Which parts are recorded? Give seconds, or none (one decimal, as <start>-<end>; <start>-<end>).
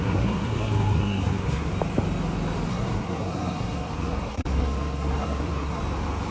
1.7-2.7; 5.8-6.3